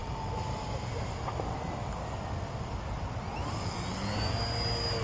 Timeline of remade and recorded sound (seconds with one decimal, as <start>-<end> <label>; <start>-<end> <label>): 0.0-5.0 recorded